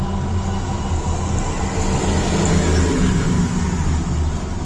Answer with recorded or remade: recorded